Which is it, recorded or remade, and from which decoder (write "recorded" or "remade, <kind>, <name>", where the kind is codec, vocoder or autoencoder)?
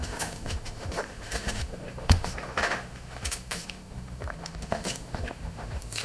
remade, autoencoder, DAC-VAE